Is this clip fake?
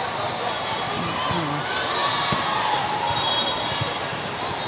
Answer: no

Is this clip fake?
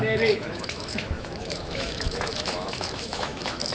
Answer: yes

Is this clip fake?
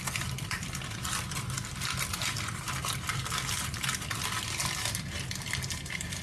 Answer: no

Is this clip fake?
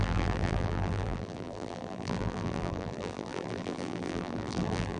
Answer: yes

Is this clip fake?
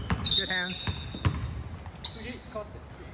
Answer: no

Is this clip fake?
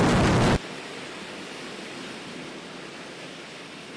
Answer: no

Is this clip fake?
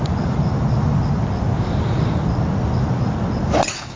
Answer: no